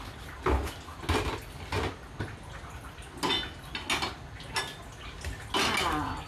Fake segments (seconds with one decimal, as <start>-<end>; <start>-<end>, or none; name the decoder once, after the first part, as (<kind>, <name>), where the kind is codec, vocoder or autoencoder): none